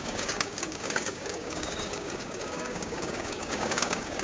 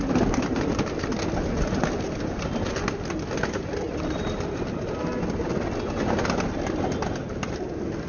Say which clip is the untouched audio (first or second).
second